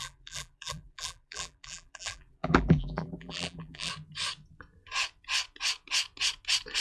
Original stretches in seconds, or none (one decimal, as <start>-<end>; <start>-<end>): 3.9-6.8